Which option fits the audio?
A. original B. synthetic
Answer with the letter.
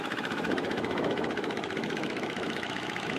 B